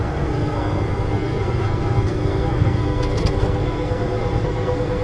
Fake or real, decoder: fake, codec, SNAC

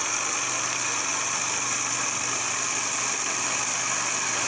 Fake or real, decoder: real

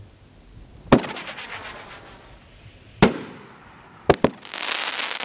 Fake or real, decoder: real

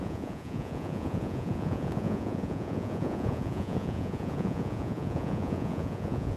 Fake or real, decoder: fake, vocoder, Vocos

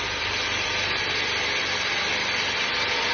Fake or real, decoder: real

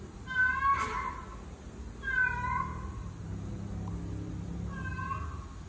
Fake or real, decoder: real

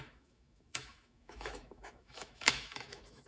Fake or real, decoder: fake, autoencoder, DAC-VAE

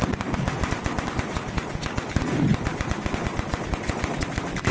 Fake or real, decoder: real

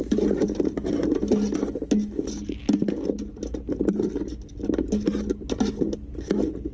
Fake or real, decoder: real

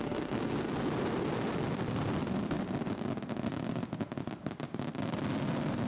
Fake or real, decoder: real